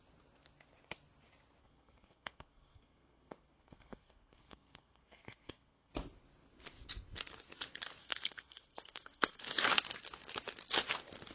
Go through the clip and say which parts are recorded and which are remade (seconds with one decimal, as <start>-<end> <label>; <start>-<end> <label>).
0.0-1.6 recorded; 1.6-5.9 remade; 5.9-8.0 recorded; 8.0-9.4 remade; 9.4-11.3 recorded